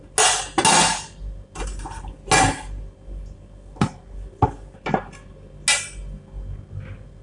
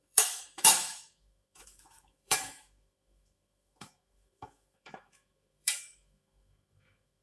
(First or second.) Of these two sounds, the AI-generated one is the second